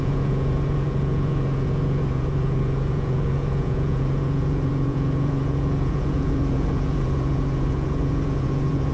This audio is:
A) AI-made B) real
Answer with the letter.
A